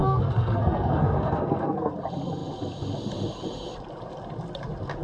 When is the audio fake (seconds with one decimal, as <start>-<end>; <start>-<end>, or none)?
0.0-1.9